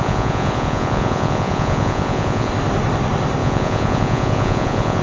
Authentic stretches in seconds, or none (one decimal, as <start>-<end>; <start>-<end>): 2.5-3.4